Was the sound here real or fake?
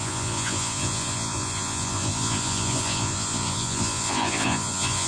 fake